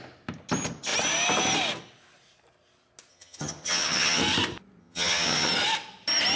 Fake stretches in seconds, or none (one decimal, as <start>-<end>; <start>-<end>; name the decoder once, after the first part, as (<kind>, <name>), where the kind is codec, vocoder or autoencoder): 3.1-4.2 (vocoder, HiFi-GAN); 4.8-5.5